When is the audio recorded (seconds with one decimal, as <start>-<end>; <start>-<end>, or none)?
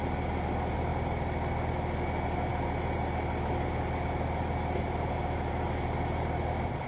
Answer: 0.0-6.9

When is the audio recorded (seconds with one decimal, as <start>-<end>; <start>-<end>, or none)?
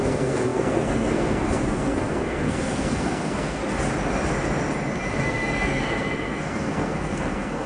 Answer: 3.6-5.2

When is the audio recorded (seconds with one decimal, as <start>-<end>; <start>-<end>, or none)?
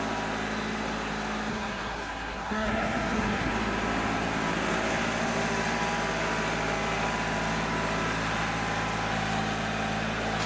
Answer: 0.0-1.5; 3.5-10.5